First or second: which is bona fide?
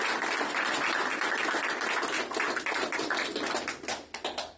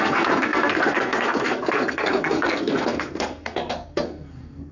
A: first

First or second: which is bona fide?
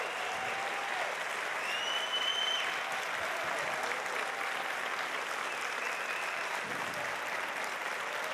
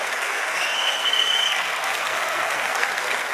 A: first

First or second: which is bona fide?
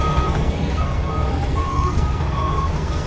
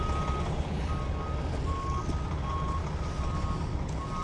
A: second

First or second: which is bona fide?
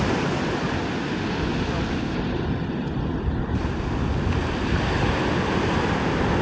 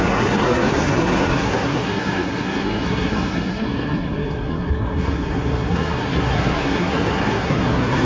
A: first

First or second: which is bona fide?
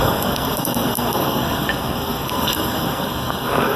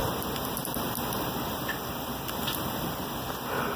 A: second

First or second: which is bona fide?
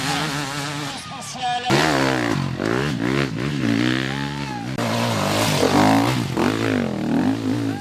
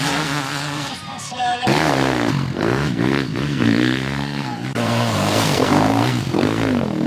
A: first